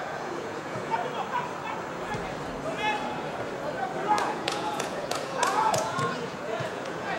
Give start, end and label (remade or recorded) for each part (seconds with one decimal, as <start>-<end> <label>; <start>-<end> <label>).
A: 0.0-1.0 remade; 1.0-4.2 recorded; 4.2-7.2 remade